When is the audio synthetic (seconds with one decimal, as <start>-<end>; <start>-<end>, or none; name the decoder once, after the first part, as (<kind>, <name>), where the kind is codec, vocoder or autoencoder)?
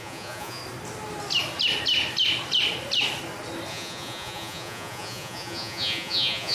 0.0-0.6 (vocoder, Vocos); 3.7-6.5